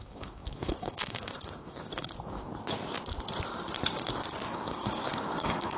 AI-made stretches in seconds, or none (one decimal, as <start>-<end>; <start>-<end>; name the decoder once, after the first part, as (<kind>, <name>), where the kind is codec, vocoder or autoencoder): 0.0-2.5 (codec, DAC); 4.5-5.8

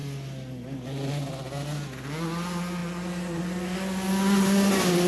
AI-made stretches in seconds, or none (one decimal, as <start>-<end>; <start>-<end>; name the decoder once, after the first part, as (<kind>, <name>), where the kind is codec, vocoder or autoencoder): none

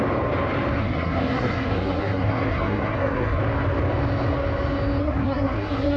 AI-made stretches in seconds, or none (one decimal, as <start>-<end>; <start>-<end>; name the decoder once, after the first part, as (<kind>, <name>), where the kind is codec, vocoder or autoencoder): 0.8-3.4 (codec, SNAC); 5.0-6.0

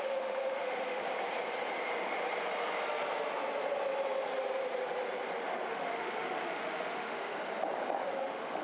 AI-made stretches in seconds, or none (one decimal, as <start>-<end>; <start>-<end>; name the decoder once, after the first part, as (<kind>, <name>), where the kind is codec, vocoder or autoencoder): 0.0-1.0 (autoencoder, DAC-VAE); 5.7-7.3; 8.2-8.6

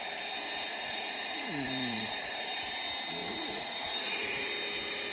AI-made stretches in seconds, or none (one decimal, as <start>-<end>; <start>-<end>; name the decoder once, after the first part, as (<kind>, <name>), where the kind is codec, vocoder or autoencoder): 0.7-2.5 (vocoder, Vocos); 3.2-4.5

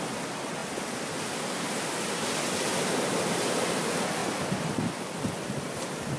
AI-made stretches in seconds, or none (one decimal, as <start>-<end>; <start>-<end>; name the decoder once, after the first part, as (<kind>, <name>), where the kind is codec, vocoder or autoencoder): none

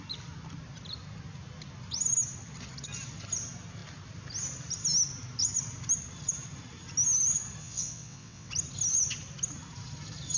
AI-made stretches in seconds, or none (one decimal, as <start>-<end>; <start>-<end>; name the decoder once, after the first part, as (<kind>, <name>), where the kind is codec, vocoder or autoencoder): 7.6-8.5 (vocoder, WaveNeXt)